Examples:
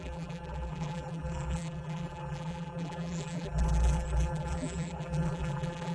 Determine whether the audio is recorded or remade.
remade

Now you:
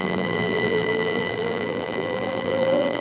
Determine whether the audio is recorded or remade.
remade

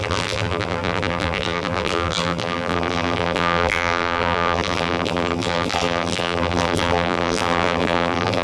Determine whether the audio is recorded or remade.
remade